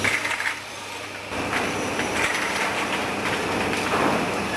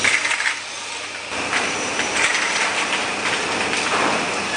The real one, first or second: second